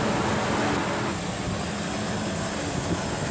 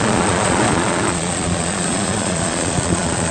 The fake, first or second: second